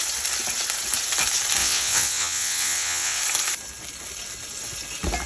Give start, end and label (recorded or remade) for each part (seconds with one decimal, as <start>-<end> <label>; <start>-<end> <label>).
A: 0.0-1.6 recorded; 1.6-3.2 remade; 3.2-5.3 recorded